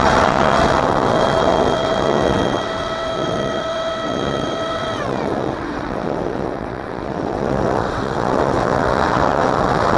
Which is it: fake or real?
fake